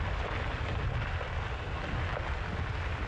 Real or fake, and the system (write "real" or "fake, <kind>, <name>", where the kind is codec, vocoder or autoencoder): real